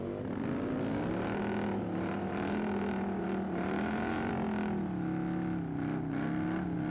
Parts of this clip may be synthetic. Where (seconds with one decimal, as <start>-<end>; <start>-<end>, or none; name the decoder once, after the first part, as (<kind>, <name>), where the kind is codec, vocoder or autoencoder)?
1.7-4.3 (vocoder, BigVGAN v2)

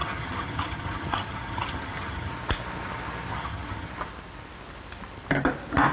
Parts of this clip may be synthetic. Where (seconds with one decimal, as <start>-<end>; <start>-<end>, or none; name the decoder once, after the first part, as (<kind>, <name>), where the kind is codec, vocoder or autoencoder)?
0.0-2.3 (vocoder, HiFi-GAN); 3.3-3.9

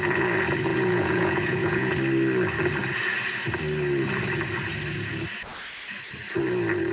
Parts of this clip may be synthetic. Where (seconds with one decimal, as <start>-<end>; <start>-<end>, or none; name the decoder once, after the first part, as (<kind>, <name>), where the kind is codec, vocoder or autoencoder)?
0.7-1.9 (vocoder, Vocos)

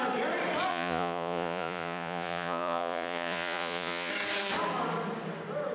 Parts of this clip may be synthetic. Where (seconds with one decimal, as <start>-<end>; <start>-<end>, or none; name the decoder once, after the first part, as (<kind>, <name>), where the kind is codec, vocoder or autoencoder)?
0.7-4.1 (vocoder, Vocos)

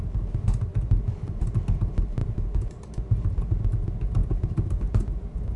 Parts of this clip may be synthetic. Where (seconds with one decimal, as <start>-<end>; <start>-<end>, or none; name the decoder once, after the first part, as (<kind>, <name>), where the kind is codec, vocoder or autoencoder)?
2.2-2.9 (vocoder, BigVGAN v2); 4.2-4.8